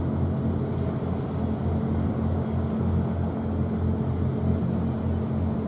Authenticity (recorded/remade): recorded